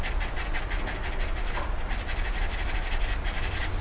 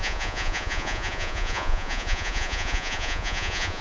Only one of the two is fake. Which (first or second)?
second